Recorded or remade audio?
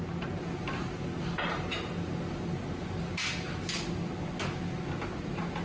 recorded